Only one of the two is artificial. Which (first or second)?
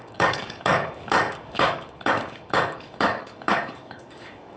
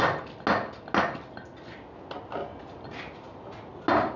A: first